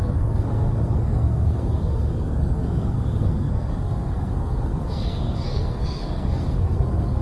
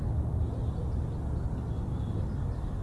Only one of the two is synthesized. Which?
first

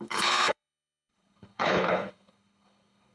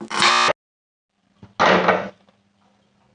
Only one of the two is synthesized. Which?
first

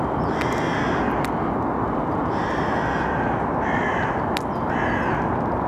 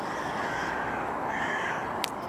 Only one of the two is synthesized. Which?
second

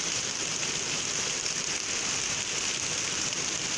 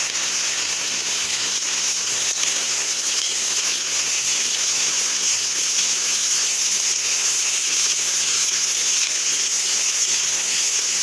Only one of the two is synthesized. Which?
second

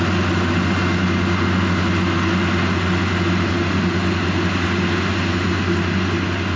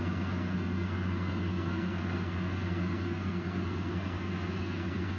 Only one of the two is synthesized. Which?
second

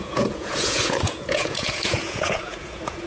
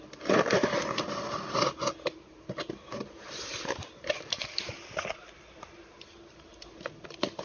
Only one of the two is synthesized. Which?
first